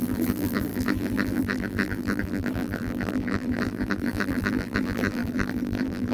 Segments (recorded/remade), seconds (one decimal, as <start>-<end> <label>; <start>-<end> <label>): 0.0-6.1 remade